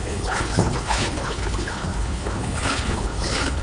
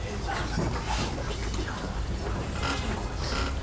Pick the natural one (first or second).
second